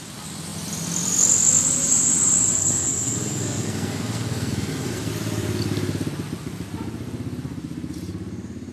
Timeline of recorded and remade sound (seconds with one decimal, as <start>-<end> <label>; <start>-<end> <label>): 0.0-2.6 recorded; 2.6-5.1 remade; 5.1-8.7 recorded